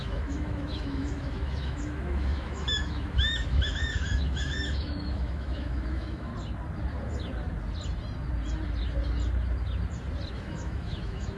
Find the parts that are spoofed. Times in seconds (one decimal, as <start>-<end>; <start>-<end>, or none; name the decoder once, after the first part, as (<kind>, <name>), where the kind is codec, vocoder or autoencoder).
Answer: 0.0-6.3 (autoencoder, DAC-VAE); 10.3-11.4